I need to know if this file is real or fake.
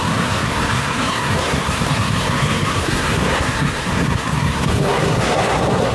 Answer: fake